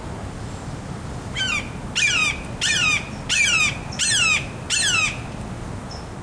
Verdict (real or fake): real